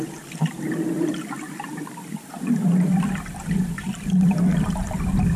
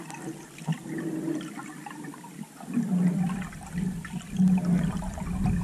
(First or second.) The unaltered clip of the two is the second